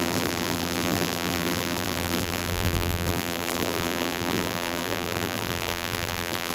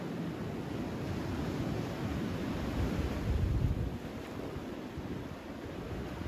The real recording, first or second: second